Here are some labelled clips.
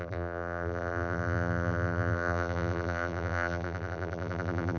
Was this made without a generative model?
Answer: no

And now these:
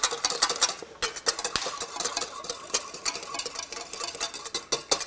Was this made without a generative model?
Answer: yes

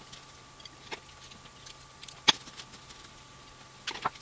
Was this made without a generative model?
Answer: yes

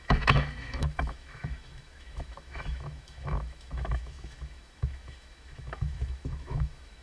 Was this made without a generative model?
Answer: no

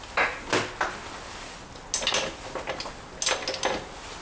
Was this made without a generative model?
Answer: yes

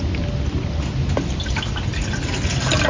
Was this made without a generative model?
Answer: yes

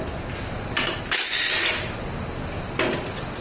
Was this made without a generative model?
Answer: yes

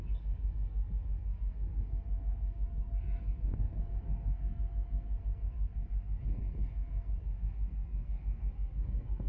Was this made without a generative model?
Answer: no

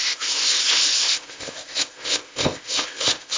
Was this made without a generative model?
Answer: no